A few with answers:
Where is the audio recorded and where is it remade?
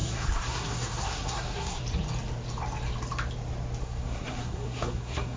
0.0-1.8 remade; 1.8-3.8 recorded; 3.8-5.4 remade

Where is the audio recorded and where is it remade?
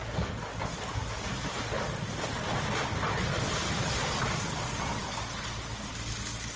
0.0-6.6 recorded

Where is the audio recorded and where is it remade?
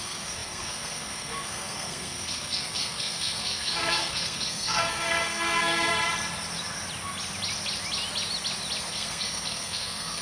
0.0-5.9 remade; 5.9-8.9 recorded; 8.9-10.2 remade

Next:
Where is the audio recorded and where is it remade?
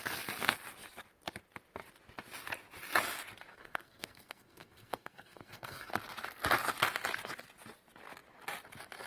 0.0-3.5 recorded; 3.5-5.9 remade; 5.9-9.1 recorded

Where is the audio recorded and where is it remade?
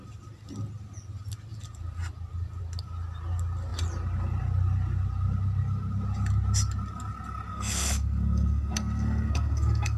0.0-7.5 recorded; 7.5-10.0 remade